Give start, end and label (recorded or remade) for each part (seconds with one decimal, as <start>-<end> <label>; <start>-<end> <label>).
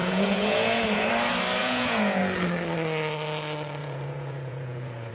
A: 0.0-1.1 remade; 1.1-1.6 recorded; 1.6-2.2 remade; 2.2-3.8 recorded; 3.8-5.1 remade